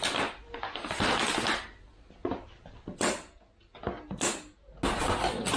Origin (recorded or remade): recorded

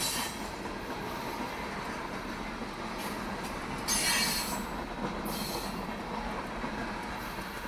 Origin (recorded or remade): recorded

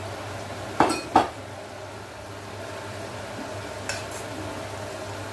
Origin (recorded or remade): recorded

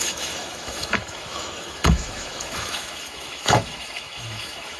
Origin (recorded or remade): remade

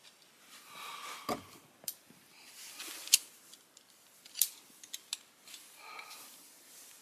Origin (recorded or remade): recorded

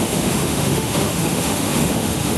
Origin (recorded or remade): remade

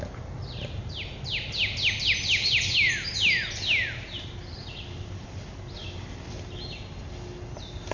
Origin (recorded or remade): recorded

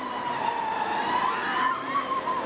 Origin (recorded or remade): recorded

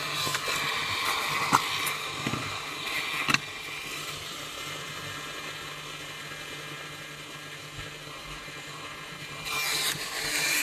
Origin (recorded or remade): recorded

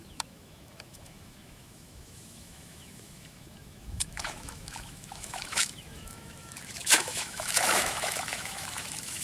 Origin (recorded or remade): remade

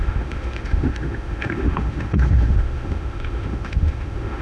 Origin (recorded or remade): remade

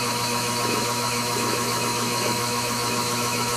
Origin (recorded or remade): remade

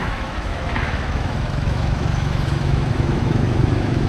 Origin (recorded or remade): remade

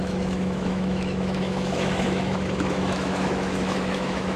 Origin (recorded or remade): remade